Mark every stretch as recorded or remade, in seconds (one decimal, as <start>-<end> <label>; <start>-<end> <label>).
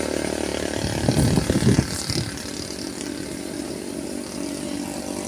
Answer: 0.0-5.3 recorded